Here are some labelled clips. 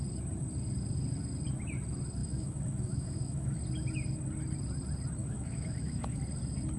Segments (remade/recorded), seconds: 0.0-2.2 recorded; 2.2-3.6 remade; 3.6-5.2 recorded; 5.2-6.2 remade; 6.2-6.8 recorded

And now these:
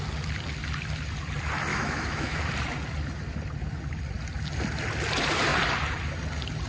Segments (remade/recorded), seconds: 0.0-1.7 recorded; 1.7-2.4 remade; 2.4-6.7 recorded

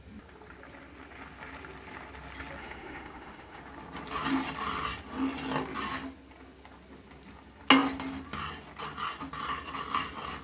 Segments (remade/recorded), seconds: 0.0-2.6 recorded; 2.6-3.6 remade; 3.6-10.4 recorded